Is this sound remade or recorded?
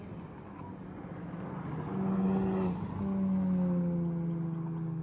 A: recorded